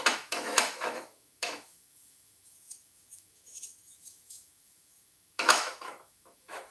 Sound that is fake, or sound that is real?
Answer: fake